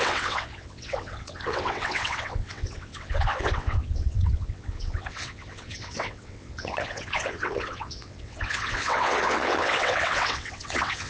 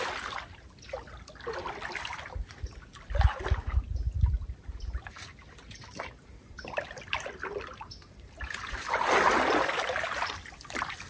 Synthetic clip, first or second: first